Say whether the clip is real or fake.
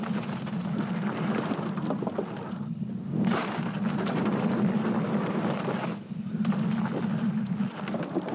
real